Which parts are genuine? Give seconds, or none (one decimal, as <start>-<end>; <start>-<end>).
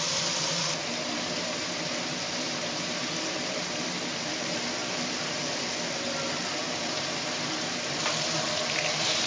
none